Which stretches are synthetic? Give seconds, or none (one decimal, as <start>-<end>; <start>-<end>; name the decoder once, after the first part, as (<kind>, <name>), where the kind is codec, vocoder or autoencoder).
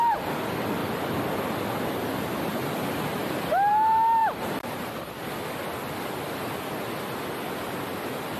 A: none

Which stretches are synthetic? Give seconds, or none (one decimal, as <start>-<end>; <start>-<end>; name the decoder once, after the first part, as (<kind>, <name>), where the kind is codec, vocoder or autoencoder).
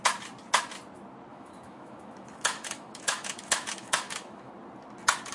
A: 1.3-4.5 (autoencoder, DAC-VAE)